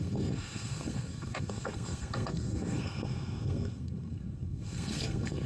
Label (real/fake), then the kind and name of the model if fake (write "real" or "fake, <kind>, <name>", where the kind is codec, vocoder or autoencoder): fake, codec, SNAC